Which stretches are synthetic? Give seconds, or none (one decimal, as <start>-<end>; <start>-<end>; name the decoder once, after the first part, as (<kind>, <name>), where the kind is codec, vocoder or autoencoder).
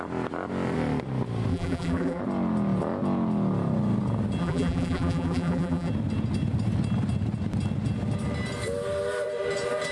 1.5-2.2 (vocoder, BigVGAN v2); 4.4-5.9